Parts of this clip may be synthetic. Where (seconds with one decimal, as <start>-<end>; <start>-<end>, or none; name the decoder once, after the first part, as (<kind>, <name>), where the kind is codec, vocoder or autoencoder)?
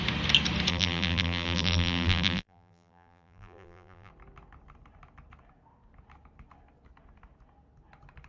0.7-4.1 (vocoder, BigVGAN v2)